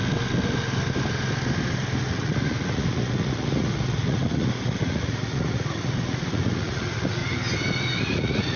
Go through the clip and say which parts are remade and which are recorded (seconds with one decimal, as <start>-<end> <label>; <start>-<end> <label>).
0.0-2.1 recorded; 2.1-7.2 remade; 7.2-8.0 recorded; 8.0-8.6 remade